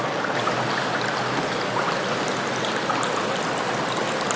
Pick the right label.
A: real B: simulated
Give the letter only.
A